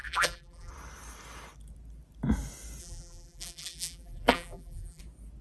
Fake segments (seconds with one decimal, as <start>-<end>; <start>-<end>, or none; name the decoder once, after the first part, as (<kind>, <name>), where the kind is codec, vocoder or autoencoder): 0.0-0.7 (vocoder, BigVGAN v2); 2.8-5.0